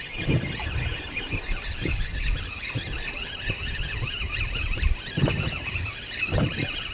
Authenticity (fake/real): real